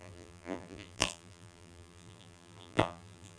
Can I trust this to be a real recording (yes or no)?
no